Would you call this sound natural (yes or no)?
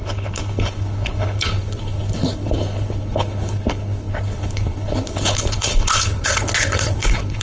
no